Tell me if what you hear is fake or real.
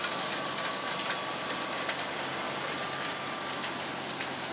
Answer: real